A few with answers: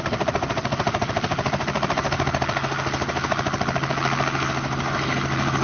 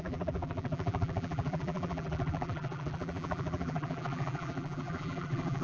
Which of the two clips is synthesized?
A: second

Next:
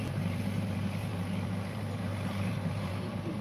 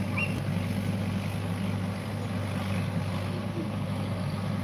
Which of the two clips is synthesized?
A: first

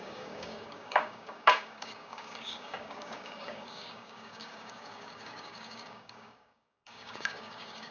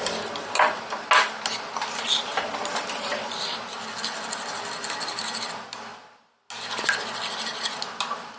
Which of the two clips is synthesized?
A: first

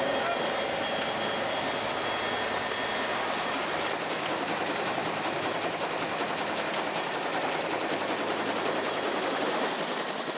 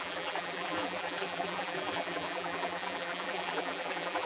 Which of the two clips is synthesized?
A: second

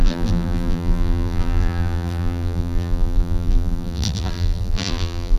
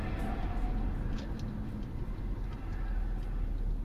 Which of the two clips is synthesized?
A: first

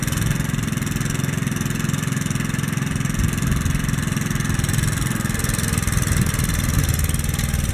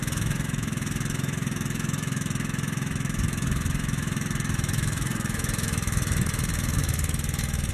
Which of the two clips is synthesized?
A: second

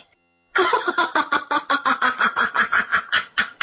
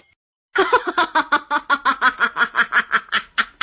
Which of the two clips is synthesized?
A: first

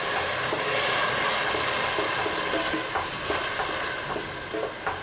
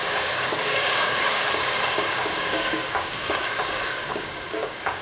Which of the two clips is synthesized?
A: second